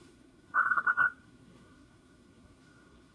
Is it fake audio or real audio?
fake